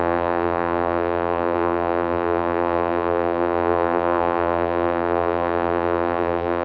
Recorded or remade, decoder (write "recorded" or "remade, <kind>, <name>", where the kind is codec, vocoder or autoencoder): remade, vocoder, BigVGAN v2